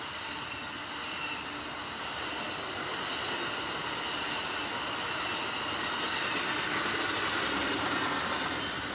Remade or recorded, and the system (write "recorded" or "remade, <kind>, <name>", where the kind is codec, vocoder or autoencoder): recorded